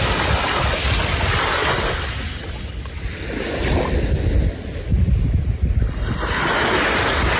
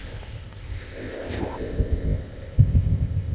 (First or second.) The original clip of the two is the first